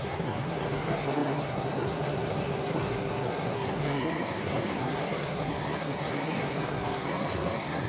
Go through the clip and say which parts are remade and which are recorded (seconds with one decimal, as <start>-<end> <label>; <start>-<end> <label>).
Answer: 0.0-7.9 remade